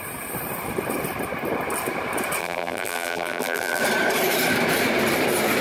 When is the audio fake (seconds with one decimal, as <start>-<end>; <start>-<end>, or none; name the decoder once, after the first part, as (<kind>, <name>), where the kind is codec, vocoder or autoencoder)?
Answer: 2.4-3.8 (vocoder, BigVGAN v2)